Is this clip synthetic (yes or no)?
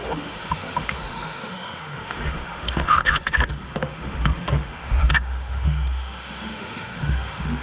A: yes